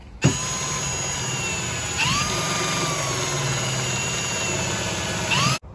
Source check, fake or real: real